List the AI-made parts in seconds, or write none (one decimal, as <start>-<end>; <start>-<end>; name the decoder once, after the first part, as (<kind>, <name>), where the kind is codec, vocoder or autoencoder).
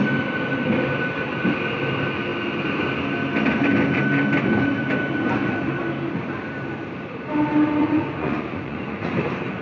7.8-9.1 (vocoder, Vocos)